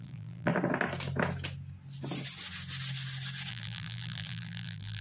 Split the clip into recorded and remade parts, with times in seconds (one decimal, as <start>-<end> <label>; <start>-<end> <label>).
0.0-0.5 remade; 0.5-3.5 recorded; 3.5-5.0 remade